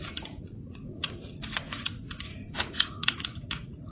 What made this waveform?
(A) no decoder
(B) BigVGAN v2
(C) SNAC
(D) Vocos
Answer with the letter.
D